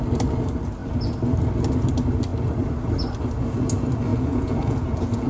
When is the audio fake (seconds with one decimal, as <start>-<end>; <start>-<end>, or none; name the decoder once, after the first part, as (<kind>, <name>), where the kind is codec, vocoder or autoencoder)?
4.1-5.3 (vocoder, Vocos)